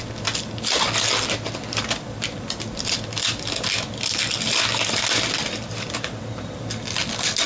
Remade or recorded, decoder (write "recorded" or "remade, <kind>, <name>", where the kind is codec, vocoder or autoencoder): recorded